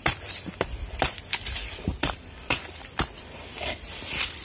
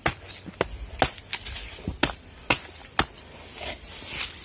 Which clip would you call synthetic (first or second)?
first